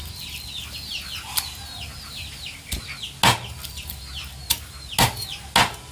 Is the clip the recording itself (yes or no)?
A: yes